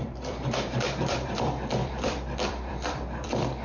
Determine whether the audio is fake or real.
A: fake